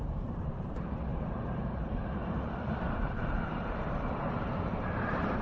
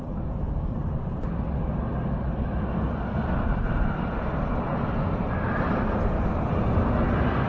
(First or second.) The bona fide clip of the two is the second